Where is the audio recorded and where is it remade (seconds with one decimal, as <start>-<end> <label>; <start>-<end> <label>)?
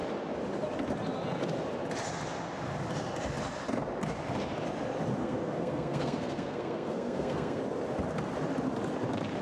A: 0.0-5.2 recorded; 5.2-7.6 remade; 7.6-9.4 recorded